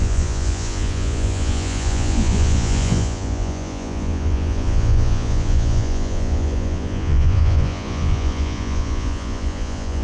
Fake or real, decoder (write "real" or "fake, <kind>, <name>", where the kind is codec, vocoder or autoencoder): fake, vocoder, Vocos